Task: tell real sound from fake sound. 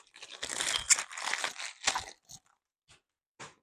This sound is real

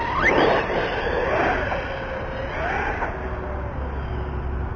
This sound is real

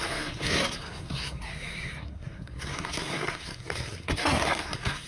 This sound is fake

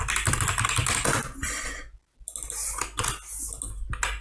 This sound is real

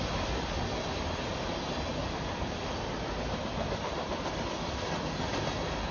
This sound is real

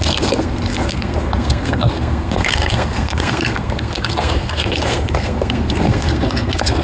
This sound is fake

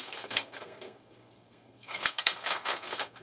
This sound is fake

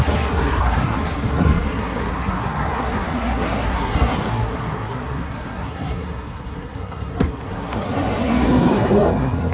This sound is fake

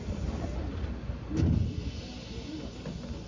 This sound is real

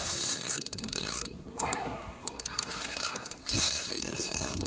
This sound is fake